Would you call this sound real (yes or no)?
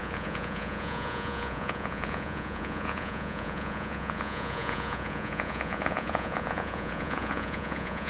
no